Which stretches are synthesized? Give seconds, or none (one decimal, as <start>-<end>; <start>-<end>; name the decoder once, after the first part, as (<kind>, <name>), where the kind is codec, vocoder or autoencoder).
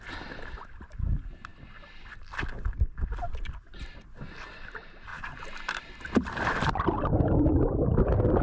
5.1-5.9 (vocoder, BigVGAN v2)